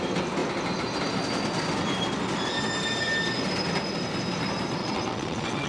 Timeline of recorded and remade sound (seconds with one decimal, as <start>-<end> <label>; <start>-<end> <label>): 0.0-4.8 recorded; 4.8-5.7 remade